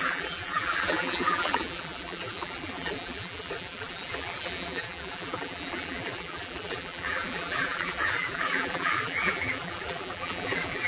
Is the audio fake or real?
fake